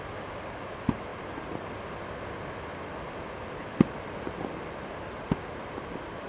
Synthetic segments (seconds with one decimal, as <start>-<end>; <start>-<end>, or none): none